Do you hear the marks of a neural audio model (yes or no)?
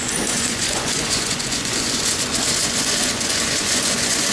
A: yes